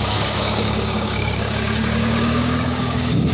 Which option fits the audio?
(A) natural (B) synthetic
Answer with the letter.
B